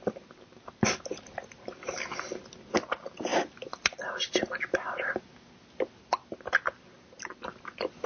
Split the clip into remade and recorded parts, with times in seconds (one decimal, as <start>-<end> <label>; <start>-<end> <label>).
0.0-8.1 recorded